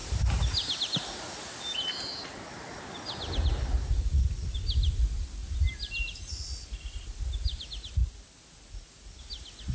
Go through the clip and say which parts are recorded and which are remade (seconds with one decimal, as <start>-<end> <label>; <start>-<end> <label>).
0.0-9.7 recorded